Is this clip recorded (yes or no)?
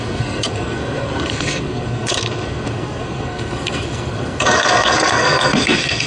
no